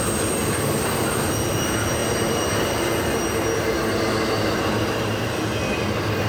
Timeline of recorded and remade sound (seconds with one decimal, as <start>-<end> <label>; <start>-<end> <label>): 0.0-6.3 recorded